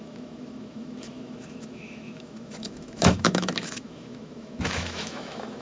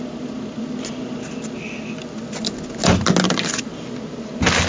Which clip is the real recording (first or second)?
second